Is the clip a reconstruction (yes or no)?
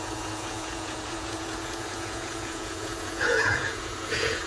yes